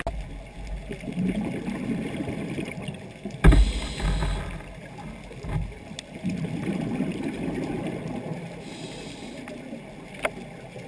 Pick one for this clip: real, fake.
real